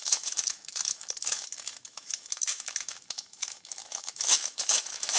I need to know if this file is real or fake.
fake